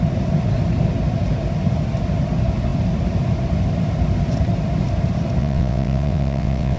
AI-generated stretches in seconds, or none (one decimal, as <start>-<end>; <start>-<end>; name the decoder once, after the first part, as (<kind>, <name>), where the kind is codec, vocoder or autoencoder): 5.4-6.8 (vocoder, WaveNeXt)